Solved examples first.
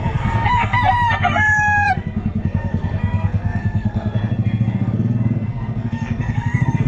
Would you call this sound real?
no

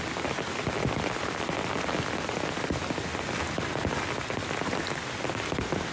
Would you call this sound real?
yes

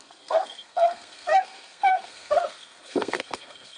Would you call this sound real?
no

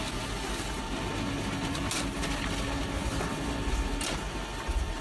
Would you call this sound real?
yes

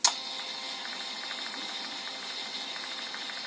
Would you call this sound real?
yes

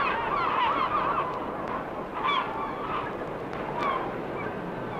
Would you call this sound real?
yes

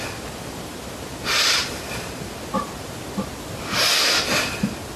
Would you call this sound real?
yes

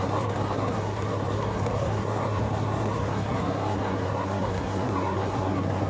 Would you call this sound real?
no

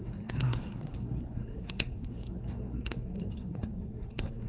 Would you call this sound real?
no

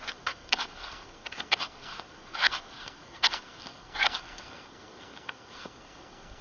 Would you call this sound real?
no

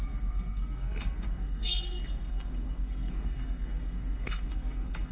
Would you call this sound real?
no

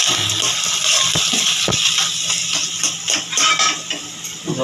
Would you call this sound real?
yes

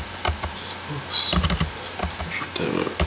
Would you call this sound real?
yes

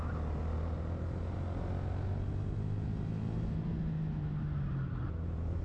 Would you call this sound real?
yes